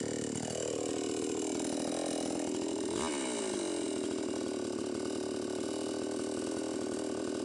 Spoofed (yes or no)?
no